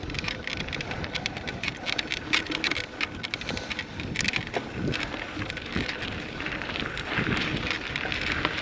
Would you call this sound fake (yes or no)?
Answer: no